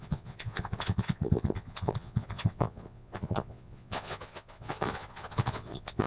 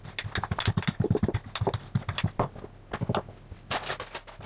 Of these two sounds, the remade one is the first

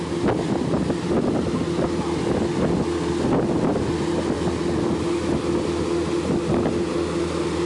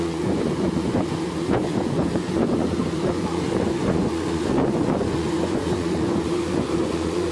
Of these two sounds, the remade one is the second